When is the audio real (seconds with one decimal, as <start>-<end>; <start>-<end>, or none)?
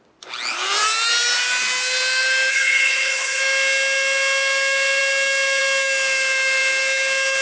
0.0-2.5; 3.4-7.4